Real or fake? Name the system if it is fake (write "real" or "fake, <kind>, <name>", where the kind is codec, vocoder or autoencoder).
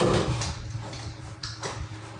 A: real